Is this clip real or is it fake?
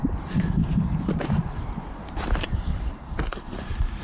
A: fake